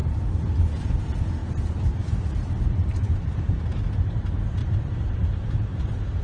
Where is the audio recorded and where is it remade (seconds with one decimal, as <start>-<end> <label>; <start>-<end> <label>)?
0.0-1.4 recorded; 1.4-3.6 remade; 3.6-4.6 recorded; 4.6-6.2 remade